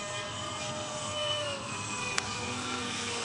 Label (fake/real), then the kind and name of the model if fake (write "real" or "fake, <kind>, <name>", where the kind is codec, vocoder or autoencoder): fake, codec, SNAC